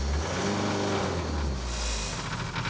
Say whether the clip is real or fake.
real